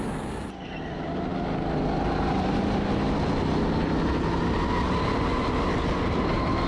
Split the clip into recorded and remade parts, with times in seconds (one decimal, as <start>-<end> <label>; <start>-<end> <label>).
0.0-6.7 recorded